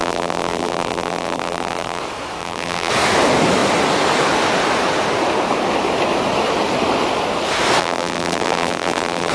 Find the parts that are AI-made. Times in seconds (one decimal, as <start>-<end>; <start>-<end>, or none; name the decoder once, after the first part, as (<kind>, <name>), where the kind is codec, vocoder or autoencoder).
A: 0.0-2.0 (vocoder, BigVGAN v2); 2.4-2.9; 7.8-9.3